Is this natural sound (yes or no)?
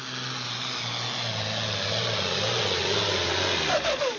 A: yes